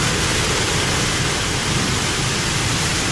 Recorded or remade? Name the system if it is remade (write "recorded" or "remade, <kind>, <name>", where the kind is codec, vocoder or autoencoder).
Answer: recorded